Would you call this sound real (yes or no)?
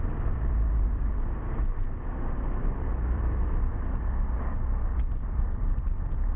yes